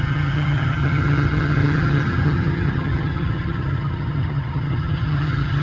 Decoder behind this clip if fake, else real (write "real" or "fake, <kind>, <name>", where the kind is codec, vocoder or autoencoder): fake, vocoder, HiFi-GAN